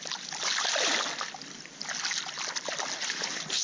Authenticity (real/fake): real